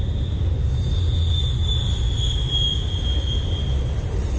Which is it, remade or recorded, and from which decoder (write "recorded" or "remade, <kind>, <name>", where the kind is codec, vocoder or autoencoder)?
recorded